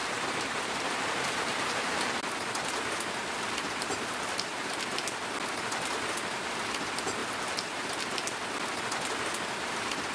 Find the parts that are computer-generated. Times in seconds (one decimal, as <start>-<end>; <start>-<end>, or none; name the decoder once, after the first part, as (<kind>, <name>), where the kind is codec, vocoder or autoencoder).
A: 0.0-2.2 (vocoder, BigVGAN v2); 3.2-4.7